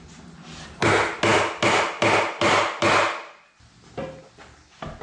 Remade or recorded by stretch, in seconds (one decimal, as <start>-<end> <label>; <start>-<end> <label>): 0.0-5.0 recorded